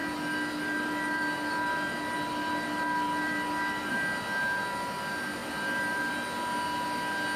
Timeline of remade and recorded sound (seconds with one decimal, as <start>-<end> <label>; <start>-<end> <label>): 0.0-3.9 remade; 3.9-5.4 recorded; 5.4-6.1 remade; 6.1-7.4 recorded